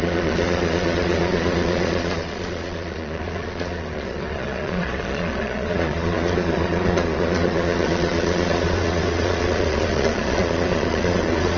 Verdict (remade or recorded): remade